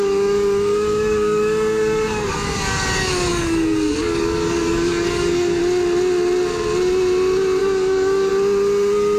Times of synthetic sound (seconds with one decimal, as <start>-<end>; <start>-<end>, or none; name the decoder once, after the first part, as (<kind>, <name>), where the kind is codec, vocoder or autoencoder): 0.0-5.6 (codec, DAC); 7.6-8.3